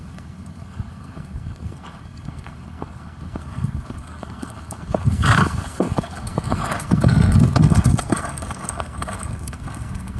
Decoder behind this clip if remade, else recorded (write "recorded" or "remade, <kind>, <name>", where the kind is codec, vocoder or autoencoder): remade, codec, SNAC